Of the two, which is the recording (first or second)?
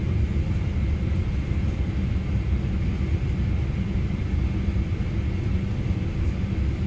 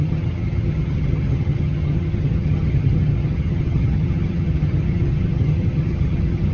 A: first